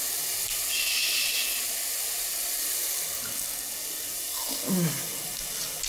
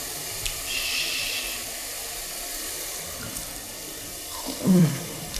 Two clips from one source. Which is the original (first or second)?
first